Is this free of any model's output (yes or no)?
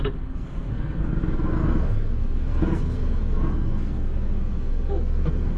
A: no